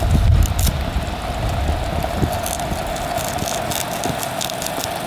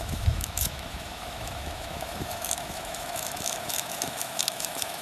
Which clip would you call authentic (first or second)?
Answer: first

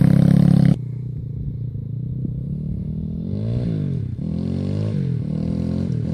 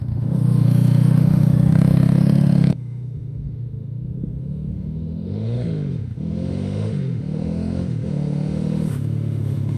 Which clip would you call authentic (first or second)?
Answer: first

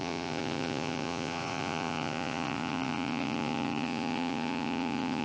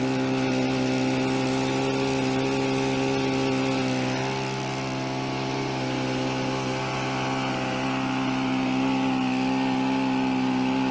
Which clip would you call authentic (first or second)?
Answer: second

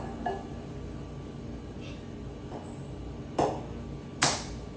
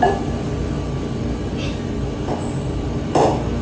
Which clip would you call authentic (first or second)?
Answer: first